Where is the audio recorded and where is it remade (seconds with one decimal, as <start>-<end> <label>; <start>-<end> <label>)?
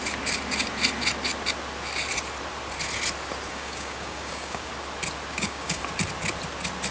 0.0-3.5 recorded; 3.5-4.7 remade; 4.7-5.3 recorded; 5.3-5.8 remade; 5.8-6.9 recorded